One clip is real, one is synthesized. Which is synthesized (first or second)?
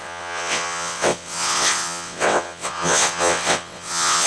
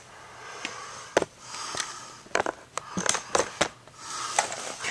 first